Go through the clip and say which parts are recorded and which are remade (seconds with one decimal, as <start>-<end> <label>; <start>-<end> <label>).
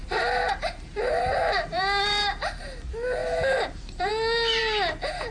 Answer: 0.0-2.6 remade; 2.6-3.2 recorded; 3.2-4.1 remade; 4.1-5.3 recorded